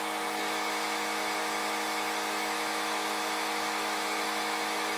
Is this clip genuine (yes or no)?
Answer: no